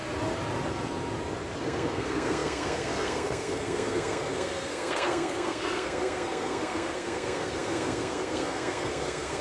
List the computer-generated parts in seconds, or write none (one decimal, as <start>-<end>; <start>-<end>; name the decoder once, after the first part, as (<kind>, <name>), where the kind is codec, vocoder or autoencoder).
1.6-9.4 (codec, SNAC)